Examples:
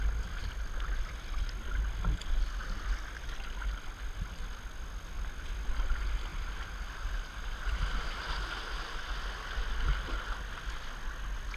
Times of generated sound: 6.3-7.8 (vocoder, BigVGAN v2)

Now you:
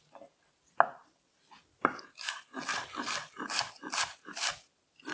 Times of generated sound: none

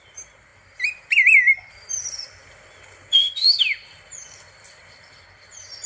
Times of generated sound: none

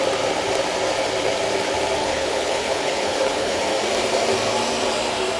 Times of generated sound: 2.0-3.6 (codec, HILCodec)